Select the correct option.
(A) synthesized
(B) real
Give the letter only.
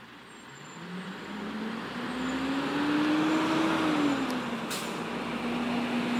B